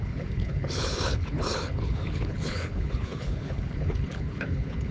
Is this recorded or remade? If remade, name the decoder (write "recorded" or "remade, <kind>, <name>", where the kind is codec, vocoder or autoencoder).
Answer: remade, codec, HILCodec